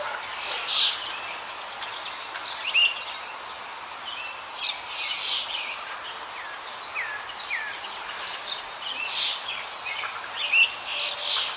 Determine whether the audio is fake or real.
real